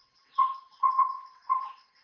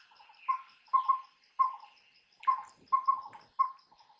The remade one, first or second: first